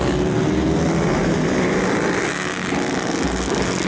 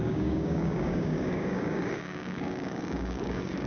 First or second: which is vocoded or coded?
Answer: second